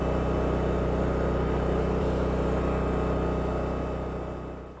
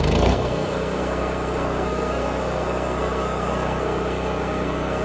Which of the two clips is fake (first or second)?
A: second